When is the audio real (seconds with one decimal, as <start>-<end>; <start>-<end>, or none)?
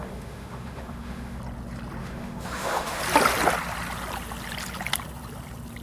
1.4-2.0; 3.0-5.8